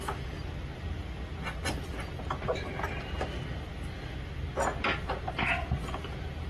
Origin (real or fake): real